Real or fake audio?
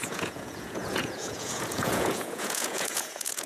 fake